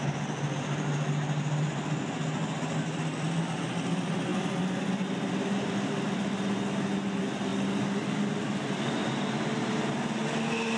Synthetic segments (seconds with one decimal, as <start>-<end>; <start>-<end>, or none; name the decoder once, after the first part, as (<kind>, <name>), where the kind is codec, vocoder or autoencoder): none